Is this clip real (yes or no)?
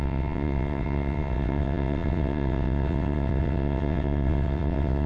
no